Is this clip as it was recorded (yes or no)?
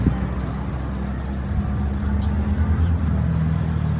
yes